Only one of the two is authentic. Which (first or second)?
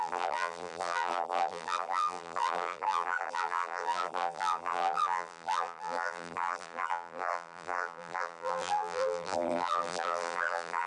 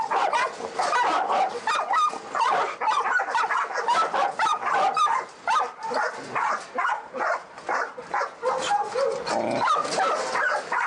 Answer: second